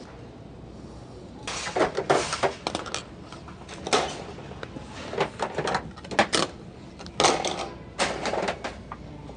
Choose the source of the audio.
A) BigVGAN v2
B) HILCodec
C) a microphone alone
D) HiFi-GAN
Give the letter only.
C